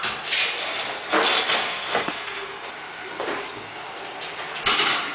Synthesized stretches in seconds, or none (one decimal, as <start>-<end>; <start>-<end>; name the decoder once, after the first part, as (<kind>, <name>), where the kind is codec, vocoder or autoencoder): 1.6-2.7 (codec, SNAC)